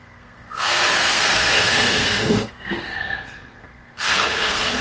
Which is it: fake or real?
fake